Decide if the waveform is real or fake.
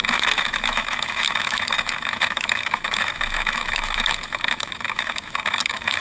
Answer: fake